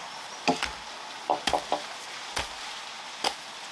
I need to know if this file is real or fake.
real